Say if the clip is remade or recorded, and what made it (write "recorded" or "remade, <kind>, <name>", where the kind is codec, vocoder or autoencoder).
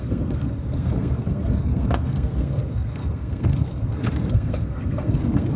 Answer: remade, codec, SNAC